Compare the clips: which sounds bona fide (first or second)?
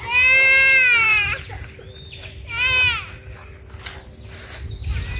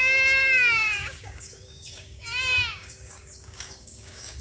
first